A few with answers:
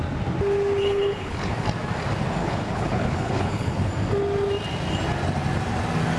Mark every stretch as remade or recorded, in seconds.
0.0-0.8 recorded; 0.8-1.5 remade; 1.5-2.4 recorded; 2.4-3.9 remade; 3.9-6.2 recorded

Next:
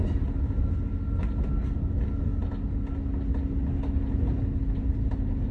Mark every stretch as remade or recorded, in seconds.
0.0-5.5 recorded

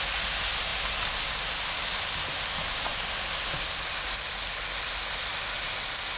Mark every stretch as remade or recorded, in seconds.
0.0-6.2 recorded

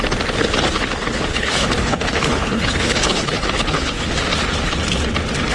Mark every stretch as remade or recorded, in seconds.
0.0-1.3 recorded; 1.3-4.1 remade; 4.1-5.5 recorded